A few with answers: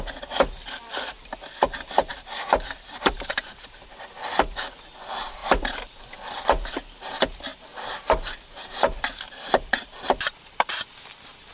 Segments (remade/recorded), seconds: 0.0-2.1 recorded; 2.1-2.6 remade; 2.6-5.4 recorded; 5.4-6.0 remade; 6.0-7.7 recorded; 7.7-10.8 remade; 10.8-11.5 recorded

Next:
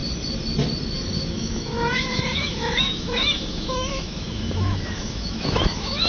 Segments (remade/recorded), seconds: 0.0-1.3 recorded; 1.3-6.1 remade

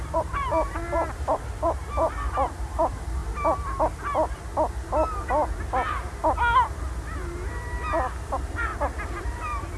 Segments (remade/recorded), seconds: 0.0-3.2 remade; 3.2-8.2 recorded; 8.2-8.7 remade; 8.7-9.2 recorded; 9.2-9.8 remade

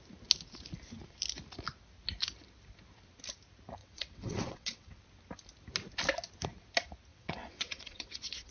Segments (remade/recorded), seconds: 0.0-3.8 recorded; 3.8-5.0 remade; 5.0-7.1 recorded; 7.1-8.5 remade

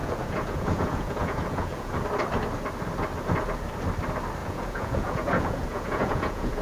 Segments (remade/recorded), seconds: 0.0-1.9 remade; 1.9-4.4 recorded; 4.4-6.6 remade

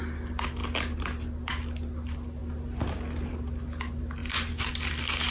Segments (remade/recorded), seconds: 0.0-4.2 recorded; 4.2-4.7 remade; 4.7-5.3 recorded